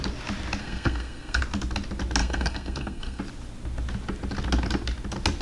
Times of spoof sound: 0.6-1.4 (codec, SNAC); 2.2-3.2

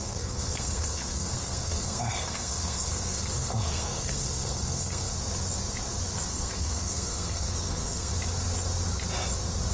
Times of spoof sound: 0.0-5.1 (codec, SNAC); 6.3-8.1

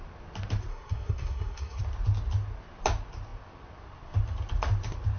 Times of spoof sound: 0.7-1.8 (codec, SNAC)

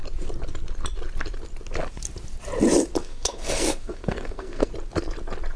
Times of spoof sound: 3.0-4.7 (codec, SNAC)